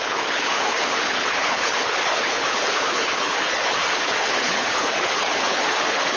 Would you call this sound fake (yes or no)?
yes